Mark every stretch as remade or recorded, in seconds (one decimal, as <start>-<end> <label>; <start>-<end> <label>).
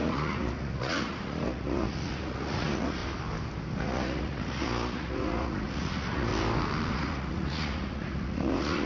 0.0-3.0 remade; 3.0-3.8 recorded; 3.8-6.3 remade; 6.3-6.9 recorded; 6.9-8.9 remade